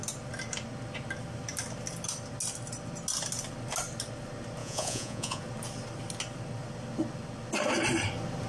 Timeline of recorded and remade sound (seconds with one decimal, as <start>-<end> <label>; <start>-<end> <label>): 0.0-4.6 recorded; 4.6-5.4 remade; 5.4-8.5 recorded